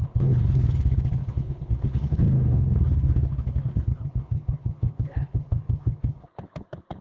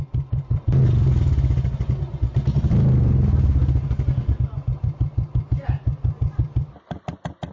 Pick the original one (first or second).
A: second